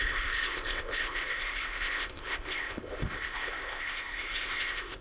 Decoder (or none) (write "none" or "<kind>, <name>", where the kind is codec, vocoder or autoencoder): codec, ZipCodec